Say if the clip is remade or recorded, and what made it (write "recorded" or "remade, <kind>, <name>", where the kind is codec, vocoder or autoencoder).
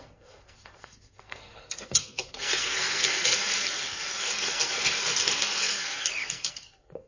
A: remade, codec, SNAC